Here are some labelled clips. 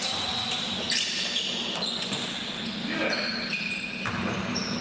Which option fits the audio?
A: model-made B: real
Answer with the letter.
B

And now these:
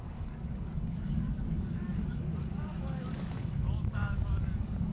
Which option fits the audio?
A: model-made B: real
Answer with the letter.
A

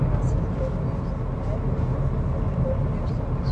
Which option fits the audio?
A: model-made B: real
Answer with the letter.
B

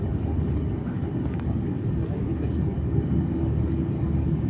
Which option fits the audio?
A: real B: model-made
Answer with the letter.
B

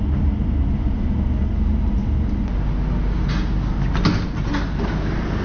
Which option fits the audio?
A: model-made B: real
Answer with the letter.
B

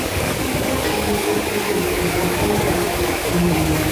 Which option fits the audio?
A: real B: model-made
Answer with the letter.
B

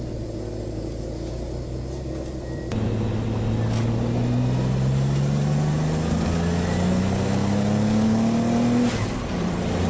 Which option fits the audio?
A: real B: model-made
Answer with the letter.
A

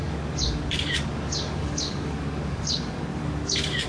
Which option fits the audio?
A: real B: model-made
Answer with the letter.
B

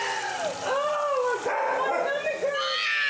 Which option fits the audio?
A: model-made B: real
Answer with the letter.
B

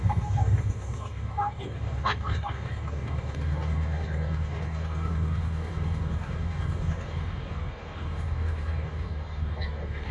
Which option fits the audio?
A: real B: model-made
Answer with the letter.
B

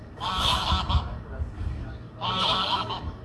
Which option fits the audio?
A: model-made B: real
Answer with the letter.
A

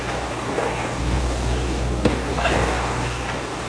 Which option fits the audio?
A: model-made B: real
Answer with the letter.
A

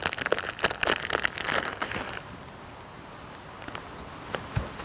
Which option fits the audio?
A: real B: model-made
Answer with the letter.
A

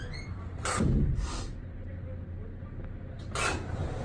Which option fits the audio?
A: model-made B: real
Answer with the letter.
B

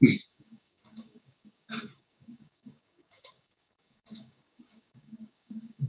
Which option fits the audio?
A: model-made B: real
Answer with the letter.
A